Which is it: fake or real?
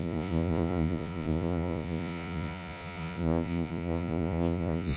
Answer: fake